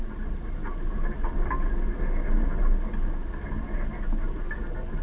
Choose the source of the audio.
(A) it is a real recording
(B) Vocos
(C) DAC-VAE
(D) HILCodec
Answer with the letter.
A